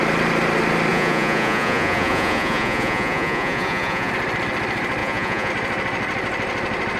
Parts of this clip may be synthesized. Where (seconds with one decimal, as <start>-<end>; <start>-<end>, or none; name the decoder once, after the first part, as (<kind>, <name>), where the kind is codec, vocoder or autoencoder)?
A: 0.9-4.1 (vocoder, Vocos); 5.0-5.5